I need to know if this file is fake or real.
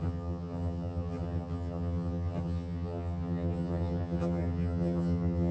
fake